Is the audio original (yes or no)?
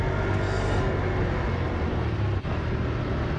yes